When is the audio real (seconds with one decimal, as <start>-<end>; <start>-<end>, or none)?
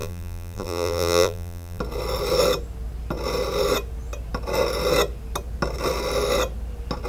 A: 1.8-7.1